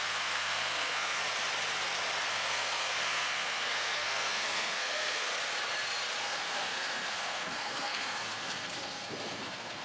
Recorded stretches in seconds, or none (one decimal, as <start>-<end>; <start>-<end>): 1.2-2.3; 5.3-6.2

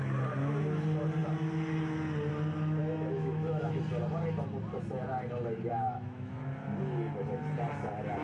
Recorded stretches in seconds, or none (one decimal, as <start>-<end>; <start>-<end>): 0.0-2.8; 3.8-5.7; 6.3-8.2

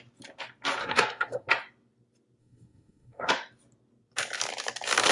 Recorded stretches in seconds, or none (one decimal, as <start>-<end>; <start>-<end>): 0.0-0.8; 1.5-2.4; 3.3-5.1

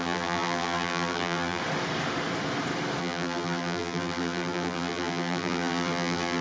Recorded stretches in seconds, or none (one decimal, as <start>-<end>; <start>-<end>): 1.6-3.0